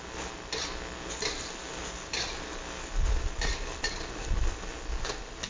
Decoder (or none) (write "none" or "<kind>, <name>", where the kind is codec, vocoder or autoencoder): none